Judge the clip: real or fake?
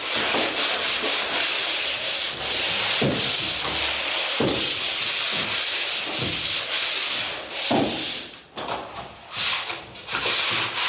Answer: real